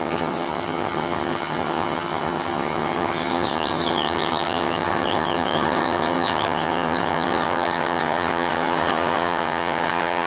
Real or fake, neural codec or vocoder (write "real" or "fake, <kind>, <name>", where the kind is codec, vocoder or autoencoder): fake, vocoder, HiFi-GAN